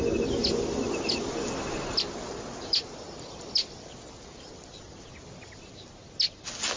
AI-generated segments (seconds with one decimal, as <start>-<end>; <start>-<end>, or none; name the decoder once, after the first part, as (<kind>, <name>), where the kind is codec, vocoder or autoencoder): none

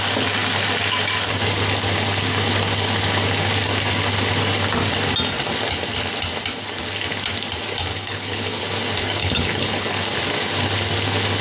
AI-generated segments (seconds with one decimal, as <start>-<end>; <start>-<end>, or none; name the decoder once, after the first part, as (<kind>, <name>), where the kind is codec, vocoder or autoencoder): 7.9-8.6 (codec, HILCodec); 9.2-10.0